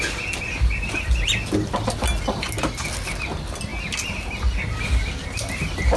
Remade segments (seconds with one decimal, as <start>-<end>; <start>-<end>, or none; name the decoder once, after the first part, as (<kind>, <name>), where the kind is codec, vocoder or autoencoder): none